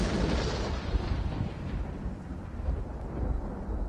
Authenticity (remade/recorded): remade